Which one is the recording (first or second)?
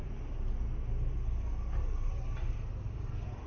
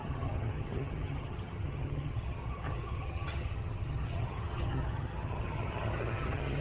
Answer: first